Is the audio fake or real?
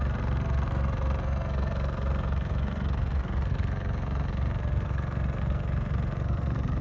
fake